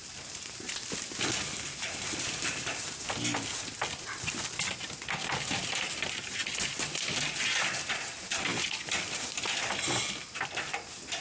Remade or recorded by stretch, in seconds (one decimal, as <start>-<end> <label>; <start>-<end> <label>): 0.0-11.2 recorded

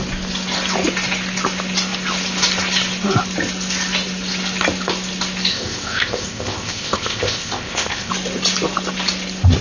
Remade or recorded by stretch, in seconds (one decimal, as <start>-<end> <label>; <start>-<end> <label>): 0.0-5.5 recorded; 5.5-8.1 remade; 8.1-9.6 recorded